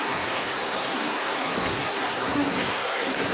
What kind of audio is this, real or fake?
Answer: fake